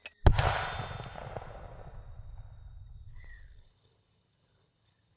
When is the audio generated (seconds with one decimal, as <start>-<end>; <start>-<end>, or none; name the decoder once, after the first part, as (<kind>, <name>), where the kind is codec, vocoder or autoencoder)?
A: 3.1-5.2 (codec, HILCodec)

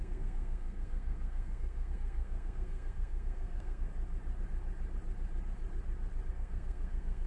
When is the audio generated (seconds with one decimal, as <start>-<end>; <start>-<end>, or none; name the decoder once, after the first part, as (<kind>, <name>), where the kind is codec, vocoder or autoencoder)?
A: 0.0-3.9 (codec, SNAC); 6.3-7.3

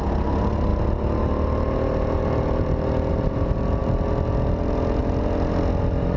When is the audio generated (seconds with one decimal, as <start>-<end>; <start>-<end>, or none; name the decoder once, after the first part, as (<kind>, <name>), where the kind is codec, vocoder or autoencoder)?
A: none

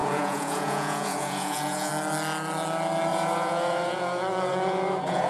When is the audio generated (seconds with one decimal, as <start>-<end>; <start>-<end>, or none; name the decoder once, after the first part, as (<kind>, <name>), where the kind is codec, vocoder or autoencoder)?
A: 0.0-1.9 (vocoder, Vocos); 3.1-5.3